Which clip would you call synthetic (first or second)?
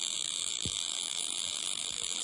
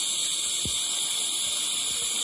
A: first